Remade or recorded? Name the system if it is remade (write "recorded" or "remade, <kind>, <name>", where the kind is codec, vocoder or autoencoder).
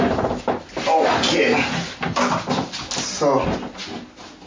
recorded